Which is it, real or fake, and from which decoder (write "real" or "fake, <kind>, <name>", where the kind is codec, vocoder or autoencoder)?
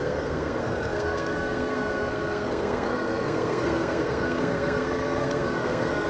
fake, codec, SNAC